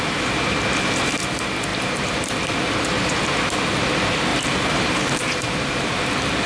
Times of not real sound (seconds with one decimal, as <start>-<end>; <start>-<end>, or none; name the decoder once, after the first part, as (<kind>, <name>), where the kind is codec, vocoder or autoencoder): 1.7-3.7 (vocoder, BigVGAN v2); 4.3-5.9